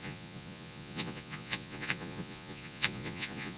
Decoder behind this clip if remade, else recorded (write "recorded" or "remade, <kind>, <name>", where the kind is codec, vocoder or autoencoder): remade, vocoder, Vocos